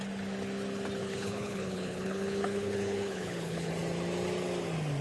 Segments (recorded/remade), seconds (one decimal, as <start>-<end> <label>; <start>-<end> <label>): 0.0-1.0 recorded; 1.0-3.7 remade; 3.7-5.0 recorded